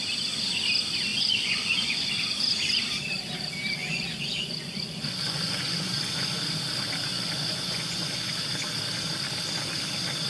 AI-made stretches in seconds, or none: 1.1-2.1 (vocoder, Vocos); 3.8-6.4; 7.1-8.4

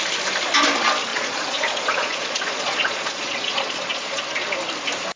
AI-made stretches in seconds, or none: 1.1-4.2 (vocoder, Vocos)

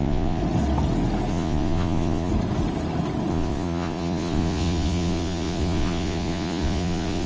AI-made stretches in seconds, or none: 0.0-0.4 (vocoder, Vocos); 1.3-2.3; 3.3-7.3

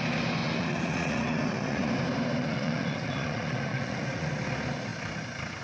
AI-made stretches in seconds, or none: 0.4-1.9 (vocoder, Vocos); 2.4-4.3